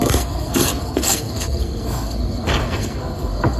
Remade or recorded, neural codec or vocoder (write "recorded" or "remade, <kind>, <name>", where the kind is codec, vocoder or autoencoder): remade, codec, SNAC